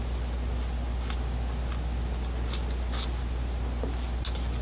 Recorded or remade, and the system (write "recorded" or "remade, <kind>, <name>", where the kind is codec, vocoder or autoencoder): recorded